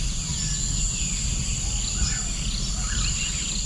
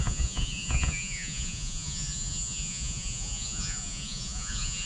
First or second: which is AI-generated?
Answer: second